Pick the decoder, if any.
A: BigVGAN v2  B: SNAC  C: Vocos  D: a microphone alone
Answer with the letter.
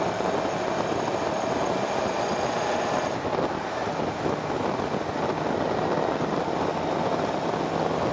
D